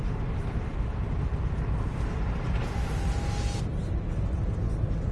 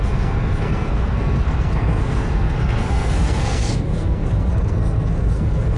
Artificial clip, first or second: second